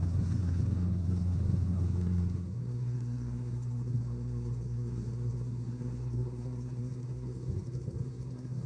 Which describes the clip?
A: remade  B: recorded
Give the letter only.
A